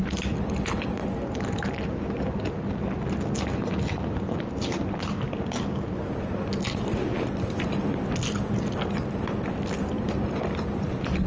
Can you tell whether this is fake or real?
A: real